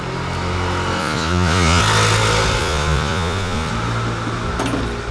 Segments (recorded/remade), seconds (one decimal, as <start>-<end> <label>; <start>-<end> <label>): 0.0-1.0 recorded; 1.0-1.8 remade; 1.8-2.6 recorded; 2.6-3.7 remade; 3.7-5.1 recorded